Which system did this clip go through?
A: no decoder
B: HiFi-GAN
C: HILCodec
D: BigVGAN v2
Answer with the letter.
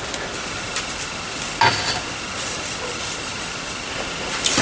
A